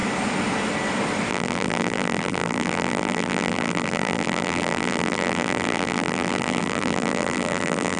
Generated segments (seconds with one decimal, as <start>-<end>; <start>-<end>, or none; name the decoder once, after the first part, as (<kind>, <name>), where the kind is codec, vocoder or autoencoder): 1.3-8.0 (vocoder, BigVGAN v2)